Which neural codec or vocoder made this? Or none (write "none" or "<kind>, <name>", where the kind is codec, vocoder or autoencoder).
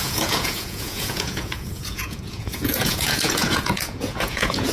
vocoder, Vocos